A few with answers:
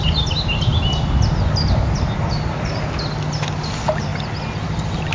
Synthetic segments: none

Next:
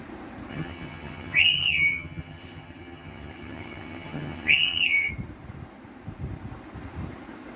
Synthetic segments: 0.5-5.1 (vocoder, HiFi-GAN)

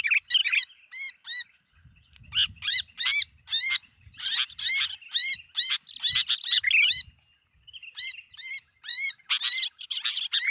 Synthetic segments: none

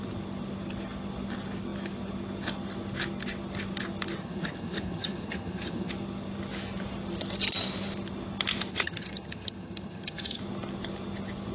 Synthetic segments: 4.2-5.9 (vocoder, HiFi-GAN); 8.7-10.4